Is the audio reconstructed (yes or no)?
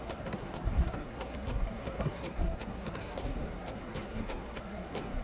yes